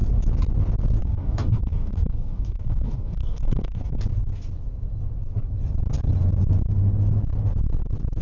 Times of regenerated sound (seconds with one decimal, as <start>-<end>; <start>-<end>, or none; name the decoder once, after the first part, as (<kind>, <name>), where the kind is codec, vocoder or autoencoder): 1.0-4.0 (codec, DAC)